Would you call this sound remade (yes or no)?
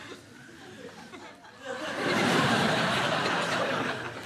yes